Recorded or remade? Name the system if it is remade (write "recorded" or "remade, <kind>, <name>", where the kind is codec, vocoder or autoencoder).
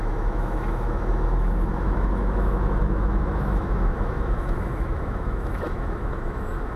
remade, autoencoder, DAC-VAE